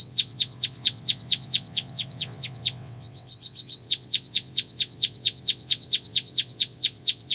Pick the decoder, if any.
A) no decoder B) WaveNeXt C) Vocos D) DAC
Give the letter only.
B